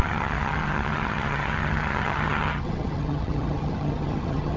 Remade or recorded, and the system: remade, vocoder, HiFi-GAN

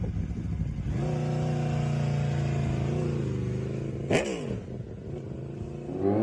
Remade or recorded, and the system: recorded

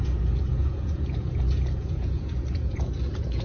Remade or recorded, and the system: remade, vocoder, Vocos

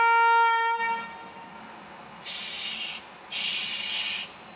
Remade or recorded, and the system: recorded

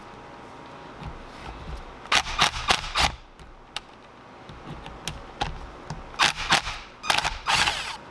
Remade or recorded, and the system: recorded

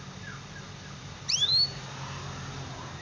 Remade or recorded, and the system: recorded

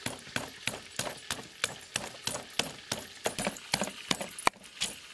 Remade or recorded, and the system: recorded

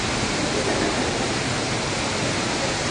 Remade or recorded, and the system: recorded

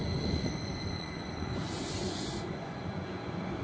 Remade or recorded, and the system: remade, vocoder, Vocos